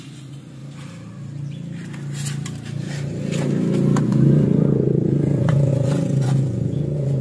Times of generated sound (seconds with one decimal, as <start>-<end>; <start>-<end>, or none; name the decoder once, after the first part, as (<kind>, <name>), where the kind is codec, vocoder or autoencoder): 0.0-0.6 (vocoder, Vocos); 4.0-7.2